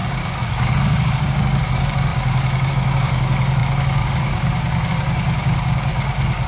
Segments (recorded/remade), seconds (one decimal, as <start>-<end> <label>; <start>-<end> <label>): 0.0-5.9 remade; 5.9-6.5 recorded